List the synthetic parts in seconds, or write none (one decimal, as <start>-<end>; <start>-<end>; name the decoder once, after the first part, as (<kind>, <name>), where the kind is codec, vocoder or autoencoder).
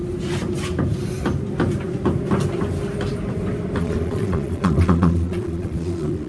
3.8-6.3 (vocoder, Vocos)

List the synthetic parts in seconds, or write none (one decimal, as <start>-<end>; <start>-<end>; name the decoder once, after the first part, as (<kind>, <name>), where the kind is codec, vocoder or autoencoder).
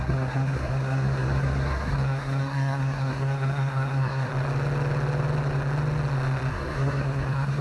0.0-4.3 (codec, SNAC); 6.5-7.6